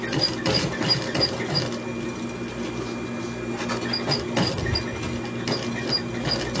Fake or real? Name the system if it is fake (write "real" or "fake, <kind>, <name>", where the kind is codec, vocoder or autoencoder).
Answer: real